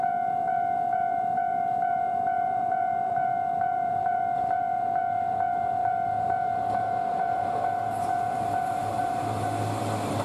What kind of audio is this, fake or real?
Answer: fake